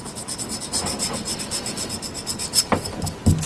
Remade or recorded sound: recorded